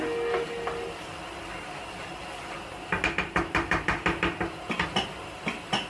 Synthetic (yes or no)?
no